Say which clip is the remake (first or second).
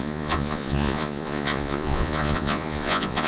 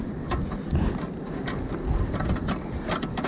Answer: first